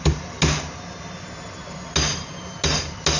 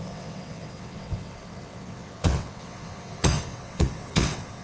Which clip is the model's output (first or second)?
second